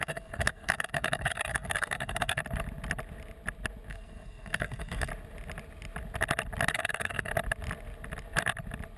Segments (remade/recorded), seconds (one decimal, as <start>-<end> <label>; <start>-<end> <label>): 0.0-2.4 remade; 2.4-3.9 recorded; 3.9-5.1 remade; 5.1-6.7 recorded; 6.7-7.3 remade; 7.3-9.0 recorded